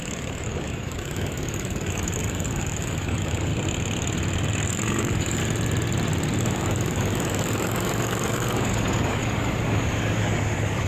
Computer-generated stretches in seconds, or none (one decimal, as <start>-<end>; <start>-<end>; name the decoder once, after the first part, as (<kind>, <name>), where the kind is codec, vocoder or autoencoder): 0.0-3.5 (codec, DAC); 4.7-5.4; 6.4-10.9